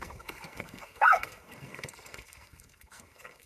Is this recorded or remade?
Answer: remade